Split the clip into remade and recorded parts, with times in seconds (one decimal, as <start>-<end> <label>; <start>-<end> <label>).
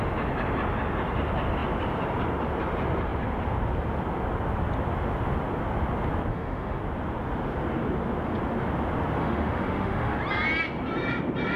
0.0-6.3 recorded; 6.3-6.8 remade; 6.8-9.2 recorded; 9.2-10.2 remade; 10.2-11.6 recorded